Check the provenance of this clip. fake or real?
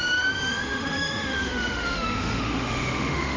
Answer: fake